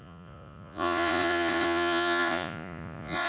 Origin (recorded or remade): remade